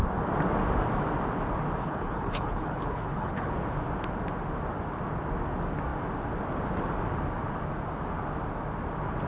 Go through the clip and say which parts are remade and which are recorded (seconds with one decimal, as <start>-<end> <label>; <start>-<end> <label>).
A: 0.0-1.8 recorded; 1.8-3.5 remade; 3.5-9.3 recorded